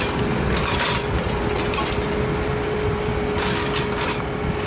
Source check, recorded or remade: recorded